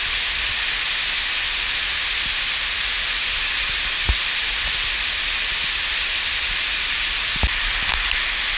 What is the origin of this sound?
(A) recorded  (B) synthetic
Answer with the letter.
A